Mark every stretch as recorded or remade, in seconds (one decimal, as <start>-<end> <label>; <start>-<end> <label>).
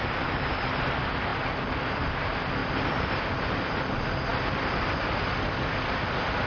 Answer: 0.0-6.5 recorded